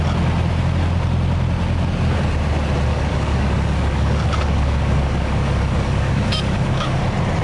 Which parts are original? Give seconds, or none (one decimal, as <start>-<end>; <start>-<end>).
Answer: 0.0-2.9; 7.0-7.4